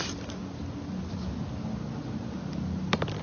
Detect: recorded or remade recorded